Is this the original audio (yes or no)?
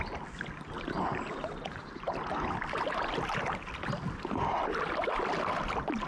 yes